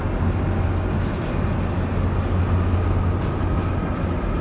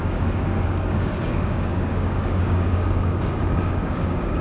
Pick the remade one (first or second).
second